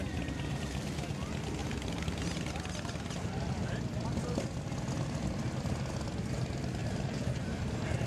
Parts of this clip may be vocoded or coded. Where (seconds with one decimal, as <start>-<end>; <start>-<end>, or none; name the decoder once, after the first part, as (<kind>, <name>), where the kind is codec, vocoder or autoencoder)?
6.8-7.6 (vocoder, BigVGAN v2)